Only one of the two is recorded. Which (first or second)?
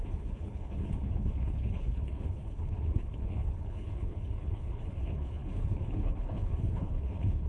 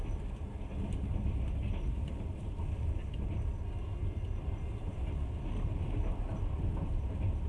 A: second